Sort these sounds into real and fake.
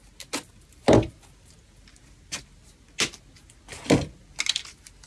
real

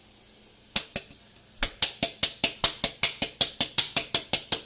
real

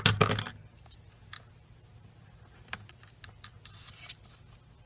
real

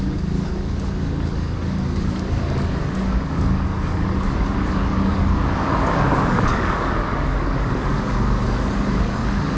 fake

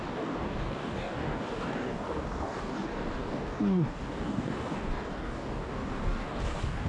fake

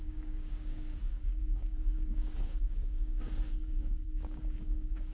fake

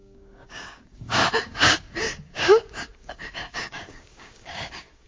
fake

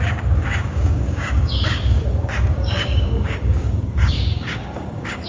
fake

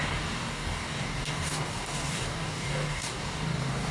fake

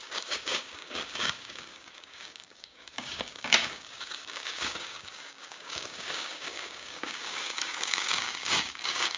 fake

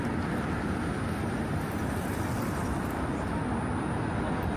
real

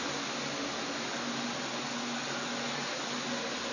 real